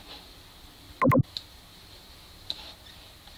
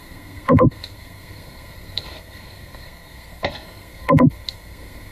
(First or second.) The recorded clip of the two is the first